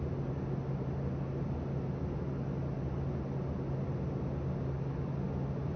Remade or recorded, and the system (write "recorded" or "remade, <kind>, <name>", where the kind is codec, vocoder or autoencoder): recorded